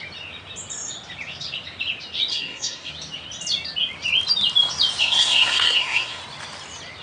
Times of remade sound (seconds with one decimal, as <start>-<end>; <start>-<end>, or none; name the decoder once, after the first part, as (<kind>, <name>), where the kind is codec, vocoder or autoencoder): 2.3-2.9 (codec, SNAC); 5.0-6.2